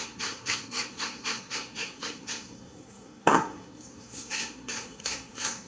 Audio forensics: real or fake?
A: fake